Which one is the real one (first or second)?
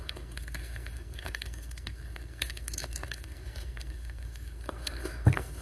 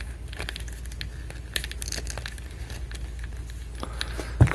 second